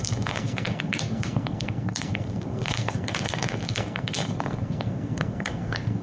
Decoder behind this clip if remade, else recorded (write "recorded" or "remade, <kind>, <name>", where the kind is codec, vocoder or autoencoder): remade, codec, SNAC